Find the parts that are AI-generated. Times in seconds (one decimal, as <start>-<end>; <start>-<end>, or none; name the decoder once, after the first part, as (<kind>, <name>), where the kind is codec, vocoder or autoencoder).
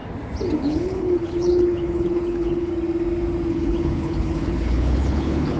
0.6-2.7 (codec, HILCodec); 3.5-5.6